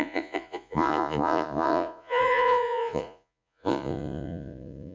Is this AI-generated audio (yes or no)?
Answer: yes